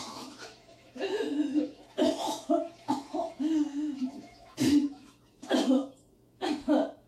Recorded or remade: remade